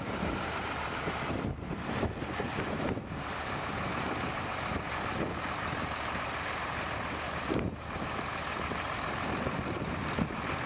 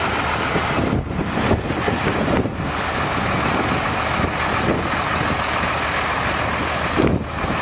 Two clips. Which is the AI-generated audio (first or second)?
first